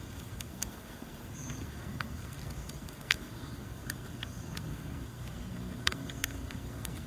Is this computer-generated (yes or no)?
yes